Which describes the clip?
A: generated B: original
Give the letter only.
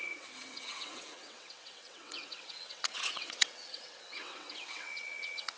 A